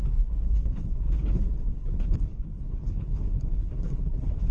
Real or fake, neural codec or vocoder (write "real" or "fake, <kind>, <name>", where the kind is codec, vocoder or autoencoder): fake, codec, HILCodec